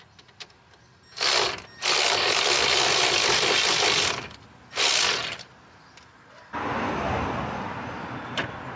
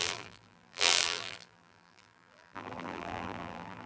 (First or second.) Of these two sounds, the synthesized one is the second